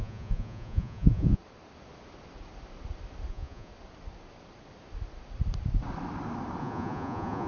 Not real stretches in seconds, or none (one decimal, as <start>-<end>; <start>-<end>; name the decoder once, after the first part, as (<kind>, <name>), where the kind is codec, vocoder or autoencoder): 0.0-1.4 (vocoder, Vocos); 3.3-3.7; 6.6-7.5